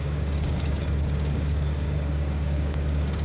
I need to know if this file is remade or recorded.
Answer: remade